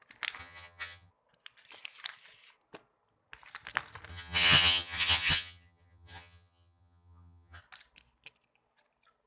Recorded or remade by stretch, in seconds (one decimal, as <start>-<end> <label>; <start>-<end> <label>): 0.0-0.4 recorded; 0.4-1.1 remade; 1.1-4.1 recorded; 4.1-7.6 remade; 7.6-9.3 recorded